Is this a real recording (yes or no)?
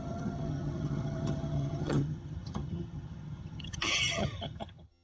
no